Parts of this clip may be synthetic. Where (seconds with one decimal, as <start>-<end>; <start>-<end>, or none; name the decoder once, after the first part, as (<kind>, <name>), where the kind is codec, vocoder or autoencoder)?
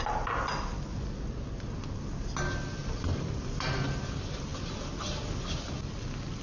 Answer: 2.8-4.0 (vocoder, BigVGAN v2)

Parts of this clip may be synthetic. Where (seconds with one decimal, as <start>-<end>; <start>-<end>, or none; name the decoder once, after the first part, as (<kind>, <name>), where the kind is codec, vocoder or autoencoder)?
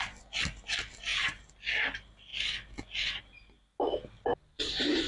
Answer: 1.1-1.6 (vocoder, BigVGAN v2); 4.3-5.1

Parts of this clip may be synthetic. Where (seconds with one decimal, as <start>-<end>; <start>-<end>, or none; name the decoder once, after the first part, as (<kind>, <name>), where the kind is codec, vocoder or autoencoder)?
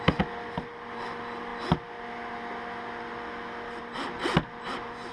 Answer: none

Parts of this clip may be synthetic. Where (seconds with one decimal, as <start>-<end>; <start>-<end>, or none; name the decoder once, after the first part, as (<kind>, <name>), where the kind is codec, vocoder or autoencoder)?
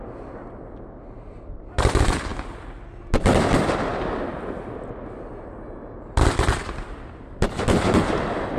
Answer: none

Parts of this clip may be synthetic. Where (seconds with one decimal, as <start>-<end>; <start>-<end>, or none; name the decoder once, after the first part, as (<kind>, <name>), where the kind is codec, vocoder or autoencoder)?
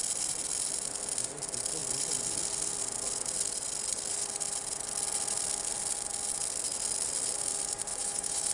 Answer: 7.9-8.5 (autoencoder, DAC-VAE)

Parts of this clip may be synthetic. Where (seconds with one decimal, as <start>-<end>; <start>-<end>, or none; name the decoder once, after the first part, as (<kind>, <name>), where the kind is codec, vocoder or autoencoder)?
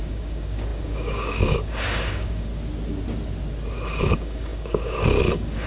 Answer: 0.0-2.5 (codec, DAC); 4.0-5.7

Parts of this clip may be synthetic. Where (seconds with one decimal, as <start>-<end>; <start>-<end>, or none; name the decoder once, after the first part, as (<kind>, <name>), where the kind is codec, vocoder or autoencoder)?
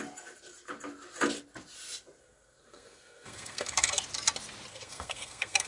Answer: 2.2-4.0 (codec, SNAC); 4.7-5.7